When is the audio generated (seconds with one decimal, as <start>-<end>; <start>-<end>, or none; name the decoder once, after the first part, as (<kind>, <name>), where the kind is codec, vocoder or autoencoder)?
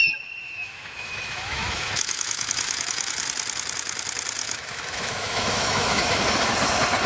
0.4-3.2 (autoencoder, DAC-VAE); 4.4-6.2